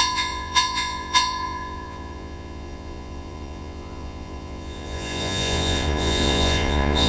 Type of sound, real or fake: fake